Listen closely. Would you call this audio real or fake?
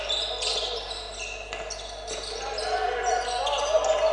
real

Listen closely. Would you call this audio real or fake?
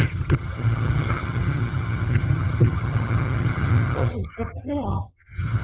fake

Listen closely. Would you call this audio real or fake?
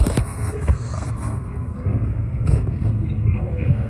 fake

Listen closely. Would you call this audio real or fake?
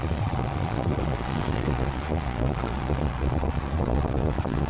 fake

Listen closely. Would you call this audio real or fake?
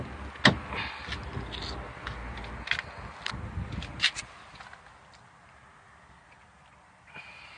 real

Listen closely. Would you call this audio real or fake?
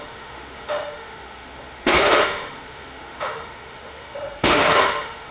fake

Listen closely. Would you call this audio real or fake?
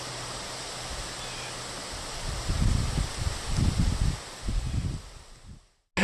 real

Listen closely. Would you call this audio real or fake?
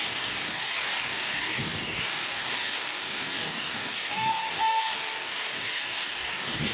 fake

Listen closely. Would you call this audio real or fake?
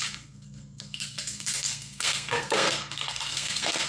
fake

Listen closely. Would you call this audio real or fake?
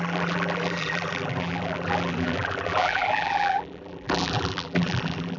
fake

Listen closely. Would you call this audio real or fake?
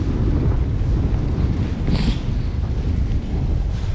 real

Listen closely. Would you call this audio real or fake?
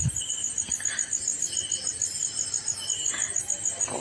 real